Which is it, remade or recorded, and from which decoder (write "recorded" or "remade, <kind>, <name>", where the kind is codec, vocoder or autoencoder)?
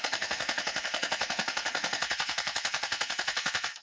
remade, codec, SNAC